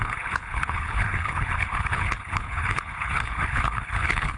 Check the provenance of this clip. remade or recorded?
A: remade